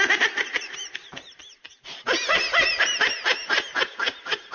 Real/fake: fake